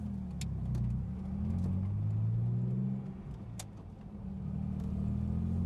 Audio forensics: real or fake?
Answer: real